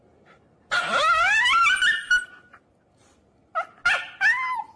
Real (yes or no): yes